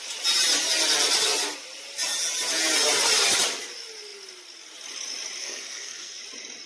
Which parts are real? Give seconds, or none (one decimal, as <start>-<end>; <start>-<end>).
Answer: 0.0-5.4; 6.2-6.7